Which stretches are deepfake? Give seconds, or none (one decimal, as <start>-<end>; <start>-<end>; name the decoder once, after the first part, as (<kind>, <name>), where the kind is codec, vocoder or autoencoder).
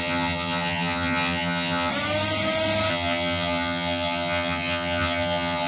0.0-1.9 (vocoder, HiFi-GAN); 2.9-5.7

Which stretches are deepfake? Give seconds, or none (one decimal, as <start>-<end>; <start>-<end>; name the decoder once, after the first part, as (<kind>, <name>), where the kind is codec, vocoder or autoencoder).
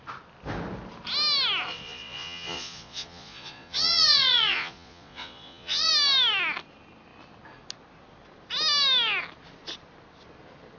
1.7-5.9 (vocoder, Vocos)